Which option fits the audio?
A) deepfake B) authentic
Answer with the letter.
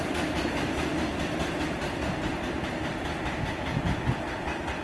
B